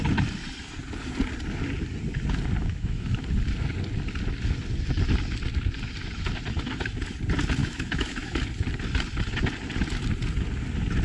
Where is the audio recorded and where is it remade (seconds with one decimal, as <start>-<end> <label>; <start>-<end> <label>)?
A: 0.0-2.6 recorded; 2.6-3.2 remade; 3.2-7.6 recorded; 7.6-8.4 remade; 8.4-11.0 recorded